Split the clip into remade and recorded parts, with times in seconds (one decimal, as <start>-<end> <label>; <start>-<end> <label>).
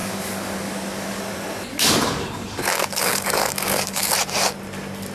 0.0-1.2 remade; 1.2-1.7 recorded; 1.7-4.1 remade; 4.1-5.1 recorded